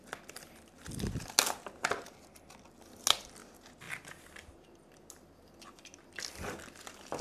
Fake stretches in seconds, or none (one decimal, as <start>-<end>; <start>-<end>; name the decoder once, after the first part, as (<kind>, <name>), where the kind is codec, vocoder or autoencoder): none